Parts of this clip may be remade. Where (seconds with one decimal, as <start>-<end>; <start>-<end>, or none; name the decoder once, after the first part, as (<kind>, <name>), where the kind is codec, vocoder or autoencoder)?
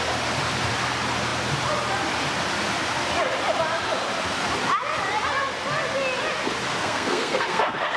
6.8-8.0 (codec, SNAC)